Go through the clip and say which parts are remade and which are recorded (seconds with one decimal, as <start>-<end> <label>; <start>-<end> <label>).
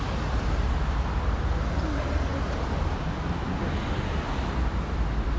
0.0-5.4 recorded